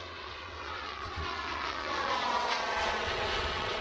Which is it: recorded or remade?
remade